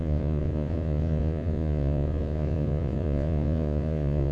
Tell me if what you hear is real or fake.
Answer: fake